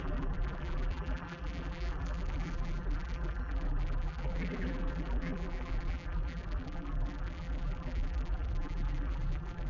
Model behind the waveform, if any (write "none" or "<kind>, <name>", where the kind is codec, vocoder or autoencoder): vocoder, BigVGAN v2